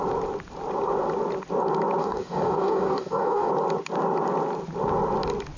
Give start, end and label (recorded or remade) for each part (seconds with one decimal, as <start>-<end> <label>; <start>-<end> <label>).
0.0-2.0 recorded; 2.0-3.5 remade; 3.5-5.6 recorded